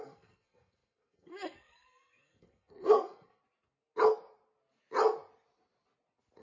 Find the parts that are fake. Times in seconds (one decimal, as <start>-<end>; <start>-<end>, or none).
0.0-3.4